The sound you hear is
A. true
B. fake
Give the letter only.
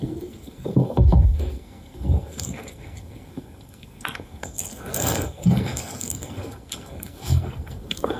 B